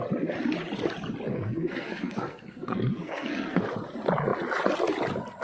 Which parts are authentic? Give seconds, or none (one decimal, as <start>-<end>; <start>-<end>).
0.0-1.3; 3.6-5.4